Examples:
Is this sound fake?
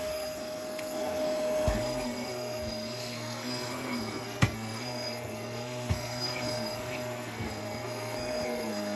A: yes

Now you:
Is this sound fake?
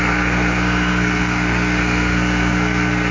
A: yes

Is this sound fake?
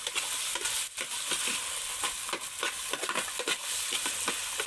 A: no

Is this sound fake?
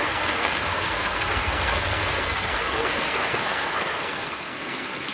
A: yes